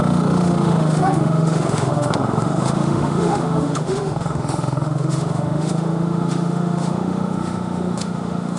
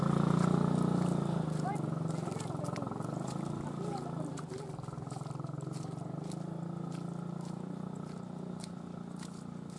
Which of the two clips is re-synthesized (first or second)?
first